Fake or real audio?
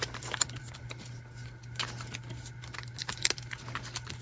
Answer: real